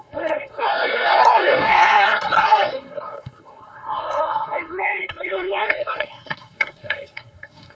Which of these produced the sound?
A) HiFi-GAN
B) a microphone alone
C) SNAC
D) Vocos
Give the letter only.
C